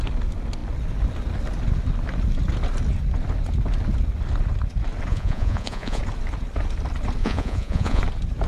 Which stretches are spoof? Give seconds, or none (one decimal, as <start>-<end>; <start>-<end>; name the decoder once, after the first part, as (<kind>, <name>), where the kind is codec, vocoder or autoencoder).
5.1-6.0 (vocoder, Vocos); 7.2-8.0